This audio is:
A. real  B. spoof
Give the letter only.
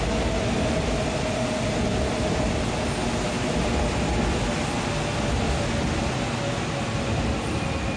A